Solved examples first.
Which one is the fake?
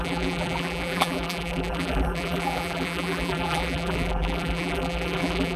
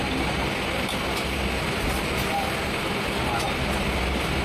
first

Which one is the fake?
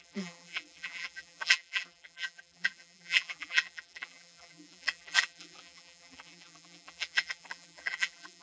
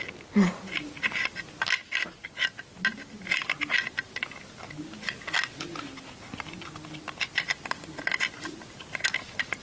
first